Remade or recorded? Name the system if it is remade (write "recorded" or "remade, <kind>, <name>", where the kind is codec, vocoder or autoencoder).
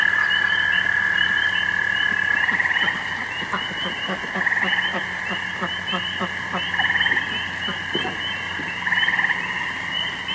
recorded